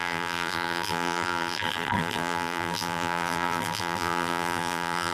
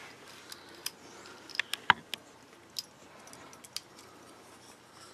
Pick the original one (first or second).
second